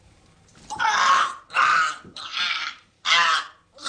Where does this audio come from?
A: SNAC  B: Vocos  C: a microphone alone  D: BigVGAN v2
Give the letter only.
D